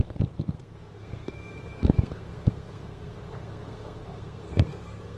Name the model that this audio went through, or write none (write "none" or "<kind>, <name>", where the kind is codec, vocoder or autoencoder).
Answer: codec, SNAC